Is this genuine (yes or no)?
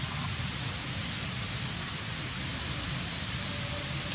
yes